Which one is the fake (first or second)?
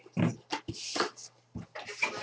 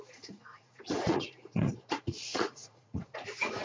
second